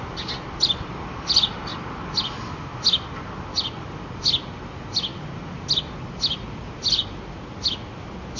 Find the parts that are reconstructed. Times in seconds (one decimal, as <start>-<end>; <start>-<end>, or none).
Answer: none

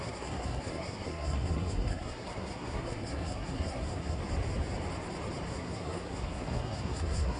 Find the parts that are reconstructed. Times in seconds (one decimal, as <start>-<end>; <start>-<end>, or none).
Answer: 0.0-4.2; 5.5-7.4

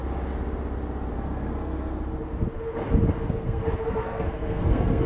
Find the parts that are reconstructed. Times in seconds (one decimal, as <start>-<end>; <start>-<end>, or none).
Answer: 1.1-1.9; 3.3-5.1

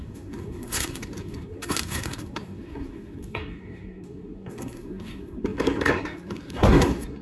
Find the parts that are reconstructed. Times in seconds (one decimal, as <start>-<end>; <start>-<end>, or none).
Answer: 0.0-7.2

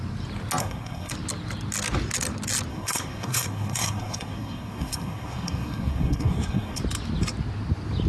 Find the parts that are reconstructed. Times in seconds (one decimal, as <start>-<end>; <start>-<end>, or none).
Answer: 0.6-1.1; 2.7-6.8